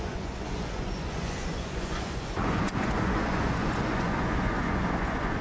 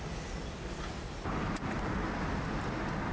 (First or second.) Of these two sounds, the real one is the second